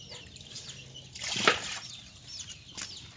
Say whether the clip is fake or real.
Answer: real